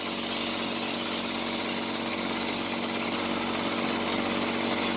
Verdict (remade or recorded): recorded